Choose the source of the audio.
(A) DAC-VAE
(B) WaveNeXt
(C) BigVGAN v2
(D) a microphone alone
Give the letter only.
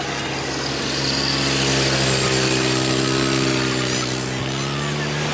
D